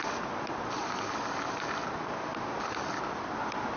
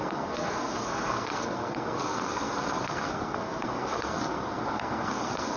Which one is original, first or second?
first